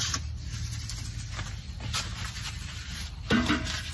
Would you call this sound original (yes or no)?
yes